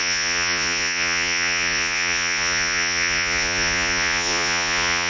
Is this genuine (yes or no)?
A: no